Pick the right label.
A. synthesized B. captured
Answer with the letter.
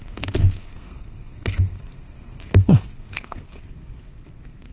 A